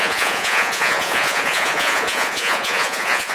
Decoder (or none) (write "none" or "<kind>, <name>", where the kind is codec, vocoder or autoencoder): vocoder, Vocos